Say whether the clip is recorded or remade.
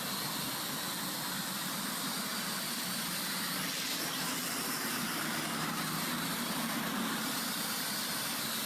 recorded